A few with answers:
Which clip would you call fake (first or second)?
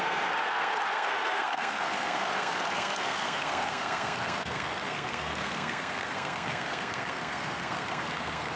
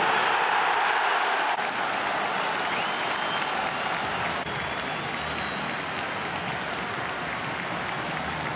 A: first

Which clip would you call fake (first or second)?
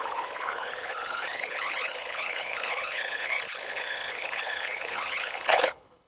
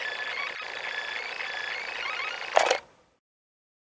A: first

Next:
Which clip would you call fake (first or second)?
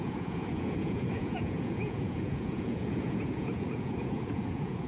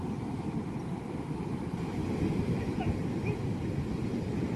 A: first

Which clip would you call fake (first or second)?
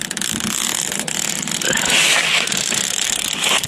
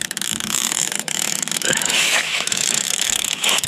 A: second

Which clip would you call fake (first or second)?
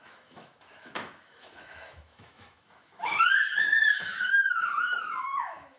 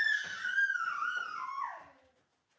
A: first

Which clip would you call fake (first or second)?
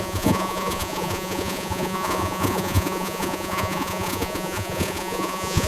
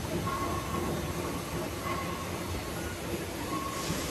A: first